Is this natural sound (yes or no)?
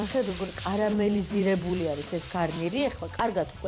no